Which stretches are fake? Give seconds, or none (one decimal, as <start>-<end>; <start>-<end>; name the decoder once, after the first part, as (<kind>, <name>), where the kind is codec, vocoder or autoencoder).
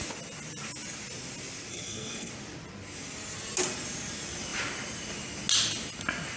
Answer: 1.7-2.3 (codec, SNAC)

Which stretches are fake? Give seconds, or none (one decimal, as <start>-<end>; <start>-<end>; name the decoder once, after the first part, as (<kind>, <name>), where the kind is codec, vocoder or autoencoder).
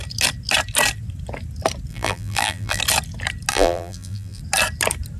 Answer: 1.9-2.8 (vocoder, BigVGAN v2); 3.5-4.4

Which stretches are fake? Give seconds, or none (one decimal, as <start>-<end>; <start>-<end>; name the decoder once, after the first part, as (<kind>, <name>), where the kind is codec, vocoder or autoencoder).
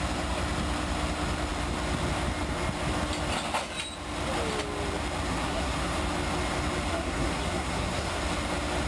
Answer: 5.3-6.0 (codec, SNAC); 6.9-8.2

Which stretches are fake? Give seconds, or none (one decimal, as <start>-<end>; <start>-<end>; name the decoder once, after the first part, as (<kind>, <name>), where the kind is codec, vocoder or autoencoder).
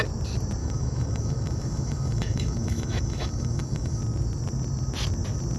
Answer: 0.6-4.0 (autoencoder, DAC-VAE)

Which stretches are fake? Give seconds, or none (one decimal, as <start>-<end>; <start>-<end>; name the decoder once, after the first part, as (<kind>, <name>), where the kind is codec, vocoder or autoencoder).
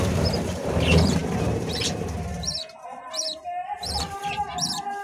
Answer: 0.0-5.0 (vocoder, BigVGAN v2)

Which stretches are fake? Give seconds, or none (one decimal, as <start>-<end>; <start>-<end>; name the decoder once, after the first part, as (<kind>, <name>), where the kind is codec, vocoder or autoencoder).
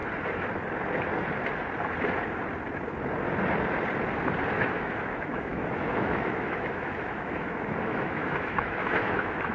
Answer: 4.5-9.5 (autoencoder, DAC-VAE)